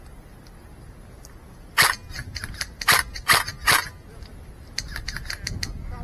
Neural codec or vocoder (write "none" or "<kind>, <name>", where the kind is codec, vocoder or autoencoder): none